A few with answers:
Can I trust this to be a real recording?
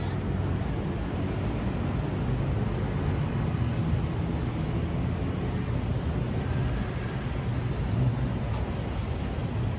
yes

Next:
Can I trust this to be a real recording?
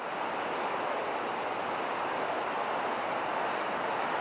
yes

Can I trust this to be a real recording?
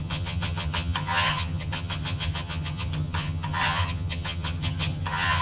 no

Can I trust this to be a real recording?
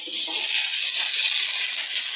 yes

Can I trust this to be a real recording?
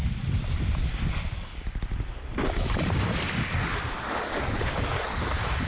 yes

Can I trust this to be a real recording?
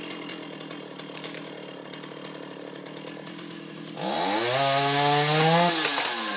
yes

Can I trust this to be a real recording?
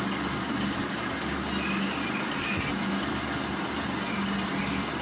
yes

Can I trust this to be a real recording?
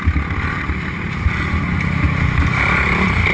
yes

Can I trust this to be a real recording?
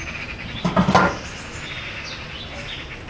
yes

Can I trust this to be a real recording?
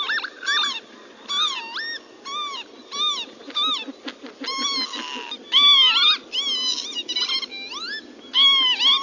yes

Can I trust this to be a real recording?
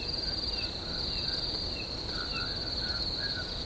yes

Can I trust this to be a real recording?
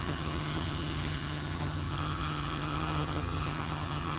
no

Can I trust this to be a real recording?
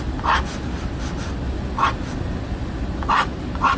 yes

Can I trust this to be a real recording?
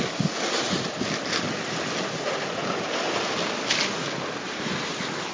yes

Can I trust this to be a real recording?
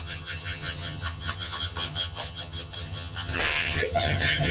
no